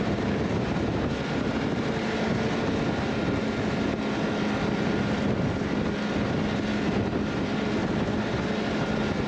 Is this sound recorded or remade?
recorded